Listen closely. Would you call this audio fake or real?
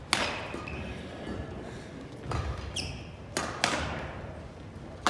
real